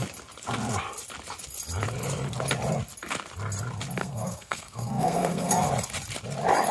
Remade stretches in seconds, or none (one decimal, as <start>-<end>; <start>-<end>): 4.0-5.7